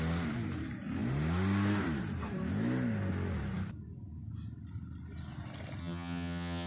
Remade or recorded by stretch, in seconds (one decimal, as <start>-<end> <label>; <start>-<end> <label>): 0.0-5.8 recorded; 5.8-6.7 remade